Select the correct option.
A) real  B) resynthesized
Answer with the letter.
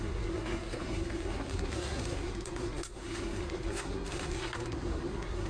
B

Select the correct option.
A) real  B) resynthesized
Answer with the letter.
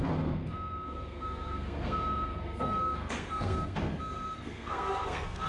B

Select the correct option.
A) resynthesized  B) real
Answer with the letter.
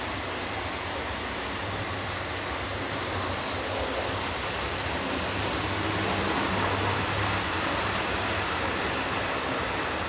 B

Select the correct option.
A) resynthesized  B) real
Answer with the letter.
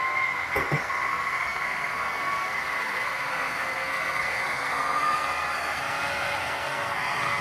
A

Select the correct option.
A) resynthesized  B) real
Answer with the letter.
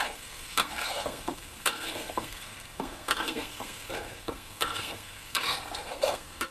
A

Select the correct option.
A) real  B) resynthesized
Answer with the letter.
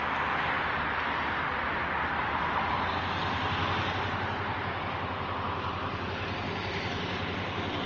A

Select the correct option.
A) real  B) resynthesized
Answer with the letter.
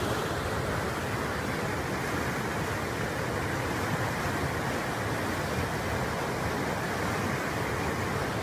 A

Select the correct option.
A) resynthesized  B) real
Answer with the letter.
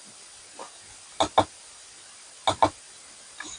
B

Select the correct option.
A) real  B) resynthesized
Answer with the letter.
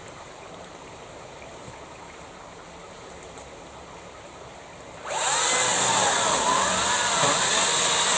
A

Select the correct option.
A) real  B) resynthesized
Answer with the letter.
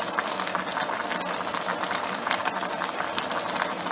A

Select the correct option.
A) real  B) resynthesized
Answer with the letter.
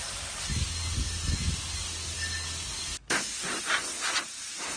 A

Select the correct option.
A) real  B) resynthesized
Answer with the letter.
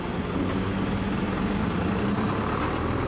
A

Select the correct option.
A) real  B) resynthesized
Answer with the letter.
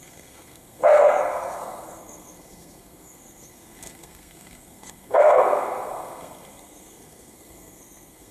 B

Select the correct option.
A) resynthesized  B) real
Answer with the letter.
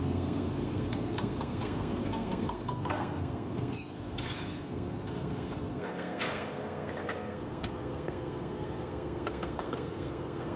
A